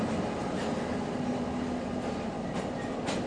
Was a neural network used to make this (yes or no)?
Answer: no